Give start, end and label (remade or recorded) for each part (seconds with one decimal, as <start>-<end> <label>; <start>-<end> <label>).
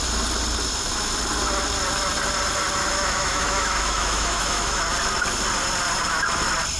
0.0-2.8 recorded; 2.8-4.8 remade; 4.8-6.8 recorded